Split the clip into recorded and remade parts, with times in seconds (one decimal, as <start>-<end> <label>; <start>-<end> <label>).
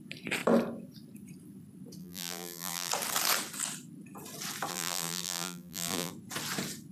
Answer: 0.0-2.0 recorded; 2.0-2.9 remade; 2.9-4.7 recorded; 4.7-6.1 remade; 6.1-6.9 recorded